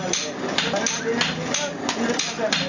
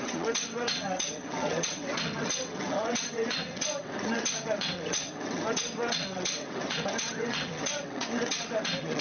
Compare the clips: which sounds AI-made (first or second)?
second